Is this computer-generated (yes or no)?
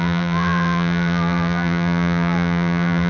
yes